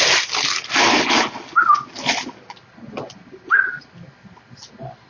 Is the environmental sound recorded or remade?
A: recorded